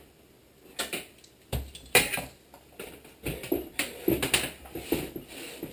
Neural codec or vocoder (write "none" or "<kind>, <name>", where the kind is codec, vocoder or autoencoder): none